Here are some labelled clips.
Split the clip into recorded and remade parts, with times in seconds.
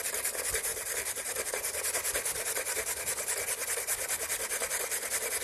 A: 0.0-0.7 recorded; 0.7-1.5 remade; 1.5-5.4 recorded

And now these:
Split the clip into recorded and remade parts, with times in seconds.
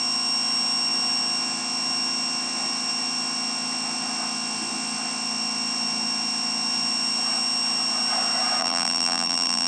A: 0.0-8.6 recorded; 8.6-9.7 remade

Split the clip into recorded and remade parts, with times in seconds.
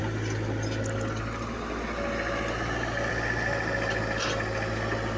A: 0.0-5.2 recorded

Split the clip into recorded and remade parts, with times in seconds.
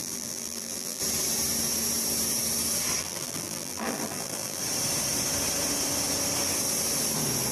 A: 0.0-1.0 remade; 1.0-3.0 recorded; 3.0-4.6 remade; 4.6-7.5 recorded